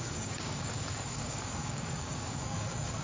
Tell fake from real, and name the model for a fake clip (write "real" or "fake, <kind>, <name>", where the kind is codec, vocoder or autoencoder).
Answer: fake, codec, DAC